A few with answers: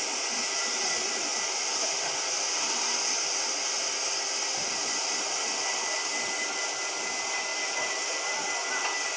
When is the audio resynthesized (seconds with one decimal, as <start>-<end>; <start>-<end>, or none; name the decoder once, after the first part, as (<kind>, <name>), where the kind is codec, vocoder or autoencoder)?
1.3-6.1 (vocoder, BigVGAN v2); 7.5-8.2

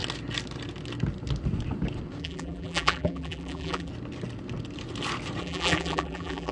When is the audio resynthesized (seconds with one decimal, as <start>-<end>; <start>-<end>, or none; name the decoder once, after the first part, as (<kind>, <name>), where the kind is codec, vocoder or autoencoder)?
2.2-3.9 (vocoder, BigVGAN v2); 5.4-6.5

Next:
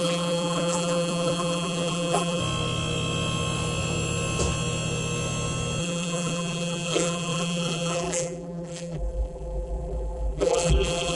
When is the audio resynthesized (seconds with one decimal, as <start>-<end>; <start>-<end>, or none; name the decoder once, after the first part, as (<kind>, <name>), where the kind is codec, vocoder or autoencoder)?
0.0-2.4 (vocoder, BigVGAN v2); 5.8-11.2

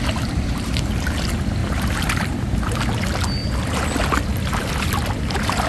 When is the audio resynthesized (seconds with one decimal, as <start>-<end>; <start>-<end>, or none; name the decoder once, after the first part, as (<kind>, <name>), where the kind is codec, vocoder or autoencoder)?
1.6-2.6 (vocoder, BigVGAN v2)

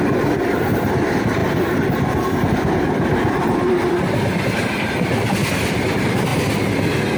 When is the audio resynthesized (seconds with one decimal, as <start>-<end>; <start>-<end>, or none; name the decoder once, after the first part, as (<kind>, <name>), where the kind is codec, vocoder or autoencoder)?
0.0-6.3 (vocoder, BigVGAN v2)